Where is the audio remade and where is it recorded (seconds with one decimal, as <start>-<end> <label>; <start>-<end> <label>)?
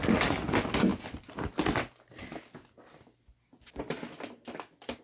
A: 0.0-5.0 recorded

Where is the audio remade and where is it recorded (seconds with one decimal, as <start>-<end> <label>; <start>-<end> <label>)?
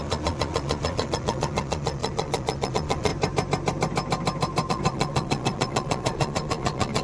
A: 0.0-3.1 remade; 3.1-4.7 recorded; 4.7-7.0 remade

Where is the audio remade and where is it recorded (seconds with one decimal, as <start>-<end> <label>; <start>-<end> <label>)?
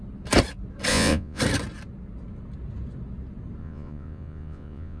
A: 0.0-0.9 recorded; 0.9-1.4 remade; 1.4-3.6 recorded; 3.6-5.0 remade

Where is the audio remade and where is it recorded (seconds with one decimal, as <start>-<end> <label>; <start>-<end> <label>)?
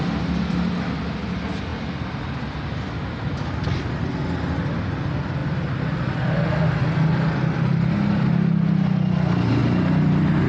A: 0.0-10.5 recorded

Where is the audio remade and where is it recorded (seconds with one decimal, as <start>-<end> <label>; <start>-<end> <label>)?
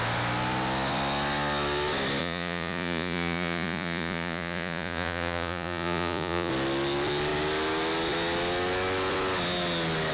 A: 0.0-2.2 recorded; 2.2-6.5 remade; 6.5-10.1 recorded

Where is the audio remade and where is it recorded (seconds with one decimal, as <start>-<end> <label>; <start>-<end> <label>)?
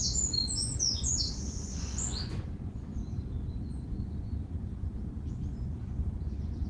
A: 0.0-6.7 remade